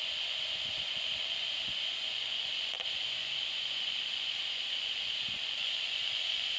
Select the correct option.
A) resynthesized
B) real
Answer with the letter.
A